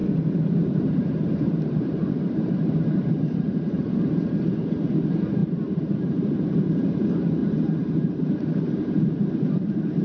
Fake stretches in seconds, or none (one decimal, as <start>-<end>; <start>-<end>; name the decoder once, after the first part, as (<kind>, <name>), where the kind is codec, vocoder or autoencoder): 0.7-10.0 (vocoder, BigVGAN v2)